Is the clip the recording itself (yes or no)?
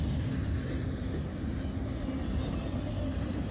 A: yes